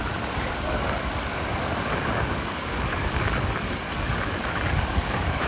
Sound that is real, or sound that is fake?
fake